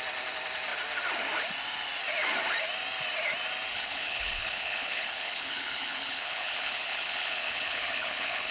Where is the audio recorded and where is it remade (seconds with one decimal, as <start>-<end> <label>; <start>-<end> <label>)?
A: 0.0-3.7 recorded; 3.7-8.5 remade